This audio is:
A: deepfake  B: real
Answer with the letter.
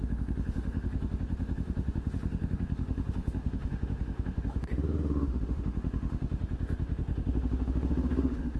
A